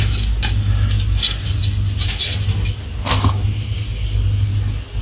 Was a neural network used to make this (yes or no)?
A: no